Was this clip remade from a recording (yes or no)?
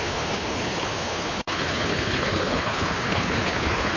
yes